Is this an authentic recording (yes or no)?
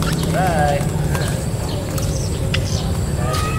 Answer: yes